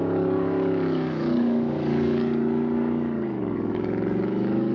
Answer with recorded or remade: remade